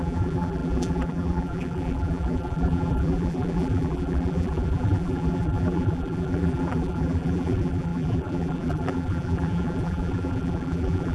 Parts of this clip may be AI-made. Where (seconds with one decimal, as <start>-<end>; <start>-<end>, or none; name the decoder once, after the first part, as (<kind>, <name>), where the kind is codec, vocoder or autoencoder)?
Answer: 0.0-11.1 (vocoder, BigVGAN v2)